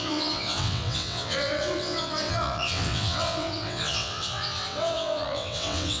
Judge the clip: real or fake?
fake